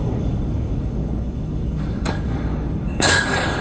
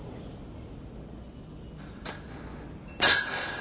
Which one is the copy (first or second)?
first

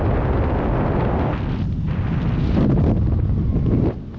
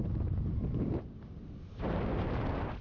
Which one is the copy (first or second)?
second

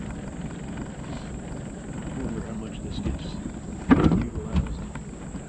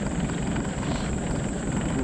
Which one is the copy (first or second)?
second